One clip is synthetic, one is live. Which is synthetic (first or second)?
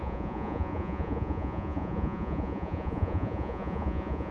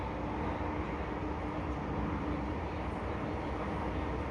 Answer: first